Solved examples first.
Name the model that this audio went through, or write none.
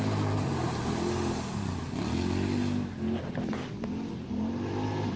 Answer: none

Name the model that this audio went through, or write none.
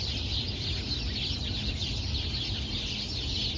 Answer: none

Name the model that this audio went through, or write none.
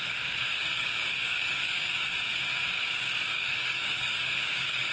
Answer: codec, DAC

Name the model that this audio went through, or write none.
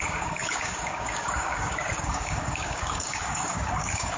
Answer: codec, DAC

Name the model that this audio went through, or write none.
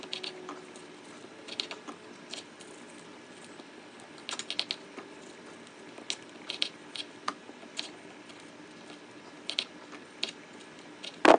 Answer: none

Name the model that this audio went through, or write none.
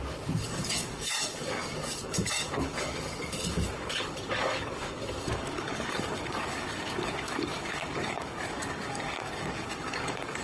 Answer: codec, DAC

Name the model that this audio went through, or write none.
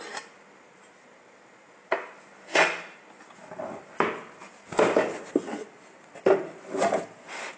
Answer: none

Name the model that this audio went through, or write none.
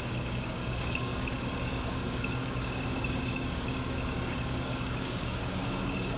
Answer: codec, DAC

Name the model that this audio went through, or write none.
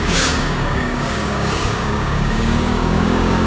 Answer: codec, DAC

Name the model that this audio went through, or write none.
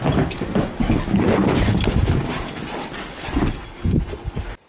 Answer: none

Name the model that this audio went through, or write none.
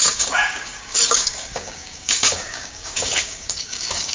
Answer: codec, DAC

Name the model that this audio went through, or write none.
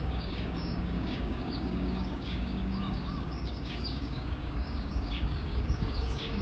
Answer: codec, DAC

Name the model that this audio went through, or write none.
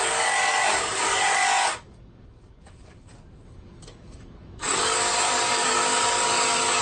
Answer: codec, DAC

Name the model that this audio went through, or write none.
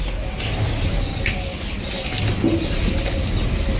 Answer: none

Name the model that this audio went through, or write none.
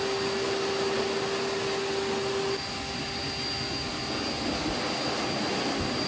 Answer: none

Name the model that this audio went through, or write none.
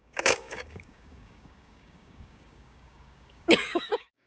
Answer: codec, DAC